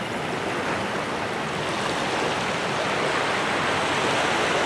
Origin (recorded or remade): recorded